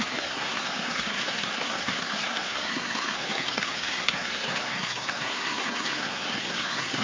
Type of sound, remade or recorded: remade